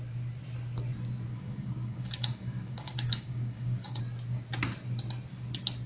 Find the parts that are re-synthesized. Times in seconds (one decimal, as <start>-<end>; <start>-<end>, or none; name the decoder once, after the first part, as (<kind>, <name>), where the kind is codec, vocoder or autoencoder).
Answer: 1.3-4.0 (codec, DAC)